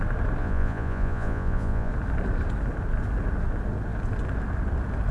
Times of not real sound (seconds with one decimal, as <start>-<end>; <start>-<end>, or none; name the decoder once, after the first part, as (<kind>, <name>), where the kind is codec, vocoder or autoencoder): 0.4-1.9 (vocoder, Vocos)